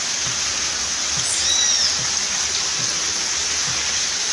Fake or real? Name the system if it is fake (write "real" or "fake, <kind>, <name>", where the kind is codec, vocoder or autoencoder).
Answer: real